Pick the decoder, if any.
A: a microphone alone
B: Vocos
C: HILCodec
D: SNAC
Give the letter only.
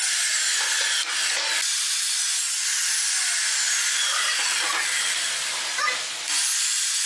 A